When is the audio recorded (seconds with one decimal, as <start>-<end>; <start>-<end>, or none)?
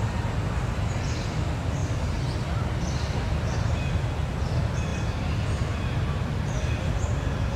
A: 0.0-7.6